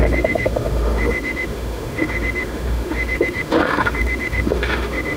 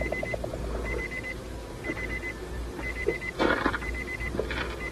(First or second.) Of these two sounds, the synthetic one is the first